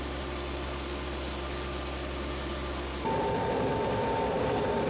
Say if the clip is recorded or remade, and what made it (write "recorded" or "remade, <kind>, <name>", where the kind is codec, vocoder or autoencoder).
remade, vocoder, BigVGAN v2